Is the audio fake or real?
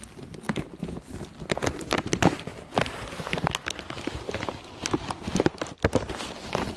real